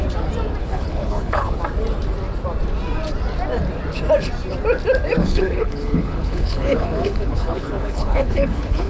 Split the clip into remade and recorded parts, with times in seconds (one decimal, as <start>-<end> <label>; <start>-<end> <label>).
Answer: 0.0-0.6 recorded; 0.6-1.6 remade; 1.6-5.2 recorded; 5.2-8.9 remade